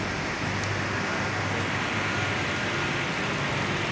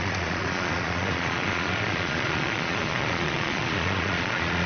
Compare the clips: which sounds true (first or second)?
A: first